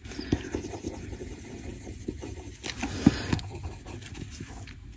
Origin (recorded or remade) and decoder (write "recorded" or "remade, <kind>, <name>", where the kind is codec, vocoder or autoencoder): recorded